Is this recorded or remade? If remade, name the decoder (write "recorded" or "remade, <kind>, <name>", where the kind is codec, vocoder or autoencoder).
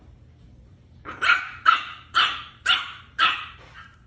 remade, vocoder, BigVGAN v2